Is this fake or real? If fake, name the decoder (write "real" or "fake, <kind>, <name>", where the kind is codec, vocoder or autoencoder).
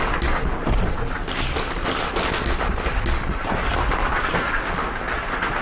real